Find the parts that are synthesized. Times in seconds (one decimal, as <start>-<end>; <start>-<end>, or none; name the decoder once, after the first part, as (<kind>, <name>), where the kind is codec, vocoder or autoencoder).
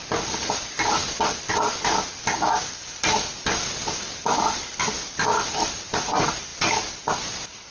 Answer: none